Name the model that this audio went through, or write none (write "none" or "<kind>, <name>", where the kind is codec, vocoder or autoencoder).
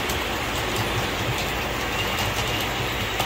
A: none